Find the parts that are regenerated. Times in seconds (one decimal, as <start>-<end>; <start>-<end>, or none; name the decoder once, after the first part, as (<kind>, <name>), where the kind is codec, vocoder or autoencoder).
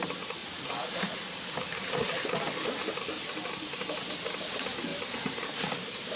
none